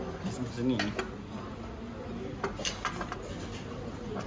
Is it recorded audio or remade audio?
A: recorded